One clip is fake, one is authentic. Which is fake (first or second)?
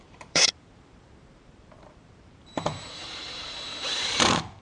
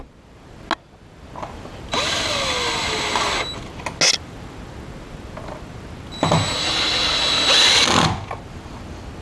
first